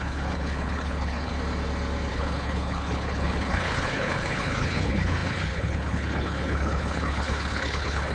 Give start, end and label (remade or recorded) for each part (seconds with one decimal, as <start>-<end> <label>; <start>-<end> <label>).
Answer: 0.0-1.3 remade; 1.3-2.1 recorded; 2.1-8.1 remade